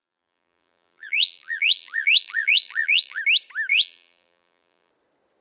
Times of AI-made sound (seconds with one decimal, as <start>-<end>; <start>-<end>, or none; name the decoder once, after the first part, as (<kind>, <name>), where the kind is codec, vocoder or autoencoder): 0.0-3.2 (vocoder, BigVGAN v2); 3.7-4.9